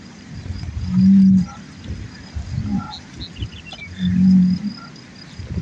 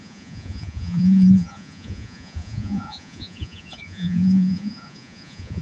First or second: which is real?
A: first